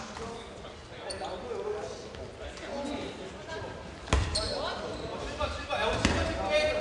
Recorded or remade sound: remade